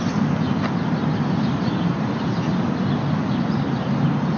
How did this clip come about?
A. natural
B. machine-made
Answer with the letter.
A